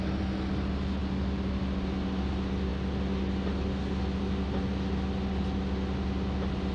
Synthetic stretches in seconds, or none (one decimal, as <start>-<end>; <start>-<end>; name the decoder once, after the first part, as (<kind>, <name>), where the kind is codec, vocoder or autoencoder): none